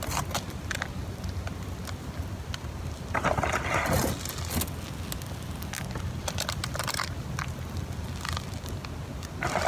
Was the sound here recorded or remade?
recorded